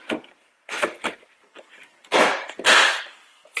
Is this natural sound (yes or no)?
yes